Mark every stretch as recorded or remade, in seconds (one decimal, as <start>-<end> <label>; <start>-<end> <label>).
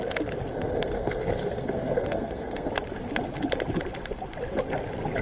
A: 0.0-0.5 recorded; 0.5-2.7 remade; 2.7-5.2 recorded